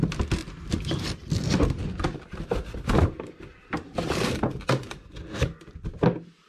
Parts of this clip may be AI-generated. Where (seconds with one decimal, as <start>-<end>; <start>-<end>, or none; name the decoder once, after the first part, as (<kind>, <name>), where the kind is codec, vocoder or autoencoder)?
0.4-4.3 (vocoder, BigVGAN v2)